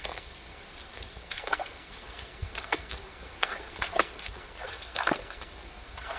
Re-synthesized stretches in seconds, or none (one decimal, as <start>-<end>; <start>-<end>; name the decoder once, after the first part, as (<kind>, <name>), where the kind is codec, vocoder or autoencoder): 0.0-6.2 (codec, SNAC)